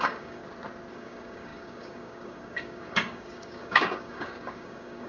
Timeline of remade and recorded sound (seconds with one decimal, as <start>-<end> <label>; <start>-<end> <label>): 0.0-0.4 remade; 0.4-0.9 recorded; 0.9-5.1 remade